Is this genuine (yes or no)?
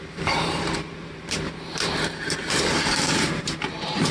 no